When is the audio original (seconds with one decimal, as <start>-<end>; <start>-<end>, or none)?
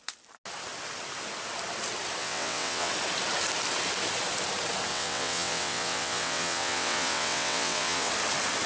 0.0-2.2; 2.9-4.9; 8.1-8.7